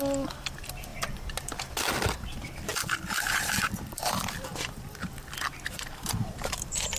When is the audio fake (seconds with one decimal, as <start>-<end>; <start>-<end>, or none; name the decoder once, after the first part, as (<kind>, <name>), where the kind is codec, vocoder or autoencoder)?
2.7-7.0 (vocoder, BigVGAN v2)